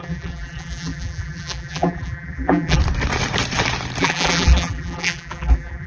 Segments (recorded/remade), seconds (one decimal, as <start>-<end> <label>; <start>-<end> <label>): 0.0-2.8 remade; 2.8-4.0 recorded; 4.0-5.9 remade